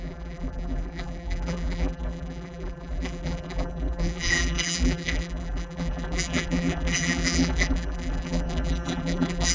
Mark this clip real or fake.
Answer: fake